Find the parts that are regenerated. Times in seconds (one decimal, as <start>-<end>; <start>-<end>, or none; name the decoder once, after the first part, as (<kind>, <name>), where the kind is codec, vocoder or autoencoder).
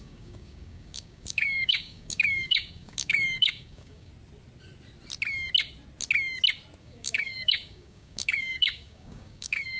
0.0-4.1 (codec, DAC); 6.8-9.8